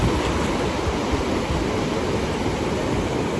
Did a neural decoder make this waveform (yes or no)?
no